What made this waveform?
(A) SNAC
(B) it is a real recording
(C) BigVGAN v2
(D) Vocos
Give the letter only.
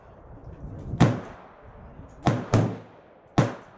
B